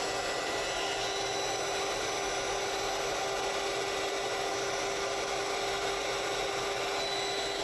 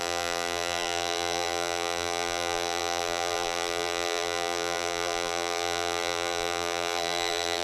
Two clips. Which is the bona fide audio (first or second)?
first